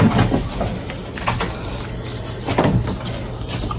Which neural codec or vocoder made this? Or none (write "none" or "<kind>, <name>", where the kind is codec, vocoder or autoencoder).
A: none